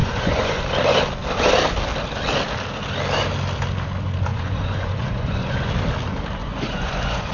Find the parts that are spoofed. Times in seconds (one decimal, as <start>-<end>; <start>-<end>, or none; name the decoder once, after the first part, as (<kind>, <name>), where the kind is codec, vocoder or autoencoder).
0.0-0.6 (vocoder, Vocos); 4.3-5.7; 6.4-7.3